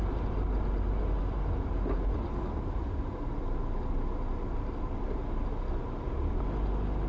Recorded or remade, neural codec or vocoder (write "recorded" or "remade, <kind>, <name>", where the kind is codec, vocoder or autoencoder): recorded